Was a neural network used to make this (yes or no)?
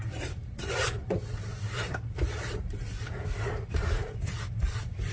yes